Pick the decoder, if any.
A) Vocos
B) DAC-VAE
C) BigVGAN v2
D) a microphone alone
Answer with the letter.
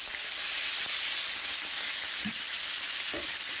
C